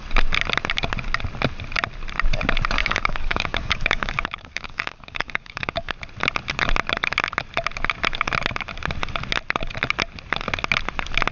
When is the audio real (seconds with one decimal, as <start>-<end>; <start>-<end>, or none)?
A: 0.0-2.8; 5.9-11.3